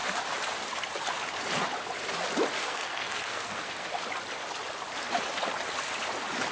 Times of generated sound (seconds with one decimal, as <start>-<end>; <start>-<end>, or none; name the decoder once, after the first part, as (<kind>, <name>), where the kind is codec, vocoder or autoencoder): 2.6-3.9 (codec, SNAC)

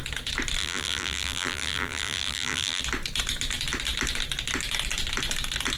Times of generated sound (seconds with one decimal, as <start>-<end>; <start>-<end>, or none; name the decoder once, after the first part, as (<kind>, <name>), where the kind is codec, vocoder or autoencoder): 0.6-2.8 (vocoder, BigVGAN v2)

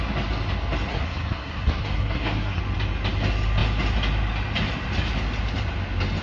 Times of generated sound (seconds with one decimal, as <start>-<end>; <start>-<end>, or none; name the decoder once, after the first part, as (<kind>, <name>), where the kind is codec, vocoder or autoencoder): 0.9-2.6 (codec, SNAC)

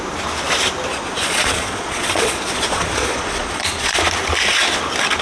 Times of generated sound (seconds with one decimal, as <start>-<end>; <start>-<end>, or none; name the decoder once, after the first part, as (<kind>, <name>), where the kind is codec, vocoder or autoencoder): 0.9-4.0 (vocoder, Vocos)